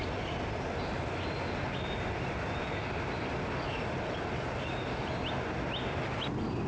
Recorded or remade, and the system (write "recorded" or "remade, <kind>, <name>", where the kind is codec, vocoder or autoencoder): recorded